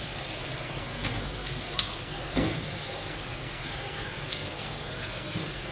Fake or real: fake